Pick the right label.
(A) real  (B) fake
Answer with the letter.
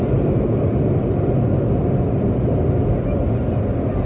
A